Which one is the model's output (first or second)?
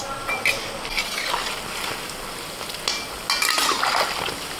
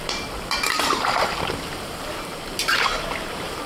second